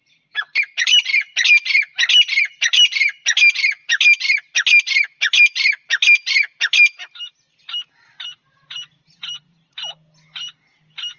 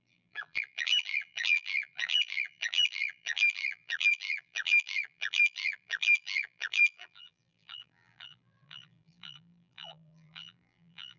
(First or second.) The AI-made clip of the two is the second